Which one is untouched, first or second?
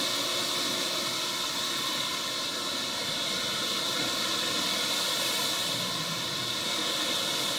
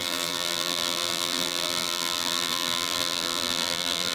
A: first